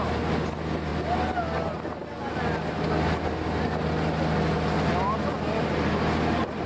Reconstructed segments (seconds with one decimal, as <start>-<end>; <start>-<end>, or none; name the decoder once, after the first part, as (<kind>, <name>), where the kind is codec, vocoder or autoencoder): none

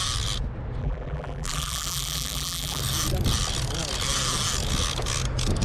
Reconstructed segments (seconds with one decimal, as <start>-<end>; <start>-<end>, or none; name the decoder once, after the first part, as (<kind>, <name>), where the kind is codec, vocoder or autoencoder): 0.8-2.8 (vocoder, BigVGAN v2)

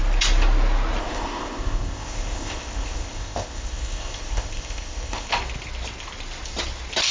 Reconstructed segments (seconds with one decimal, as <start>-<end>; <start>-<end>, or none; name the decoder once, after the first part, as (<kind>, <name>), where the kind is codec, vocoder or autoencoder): 1.0-5.3 (codec, ZipCodec)

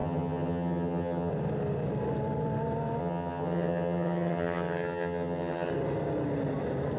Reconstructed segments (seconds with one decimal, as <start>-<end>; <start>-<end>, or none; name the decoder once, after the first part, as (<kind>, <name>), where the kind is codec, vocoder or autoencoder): 0.0-1.3 (vocoder, HiFi-GAN); 3.0-5.7

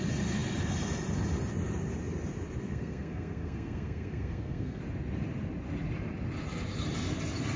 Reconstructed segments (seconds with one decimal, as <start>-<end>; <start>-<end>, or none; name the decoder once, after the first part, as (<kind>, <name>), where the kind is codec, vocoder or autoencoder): 2.6-4.8 (codec, SNAC)